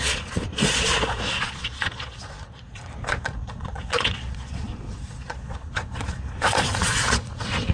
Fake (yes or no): yes